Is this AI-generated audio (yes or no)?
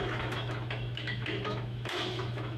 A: yes